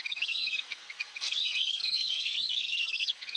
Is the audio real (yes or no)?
no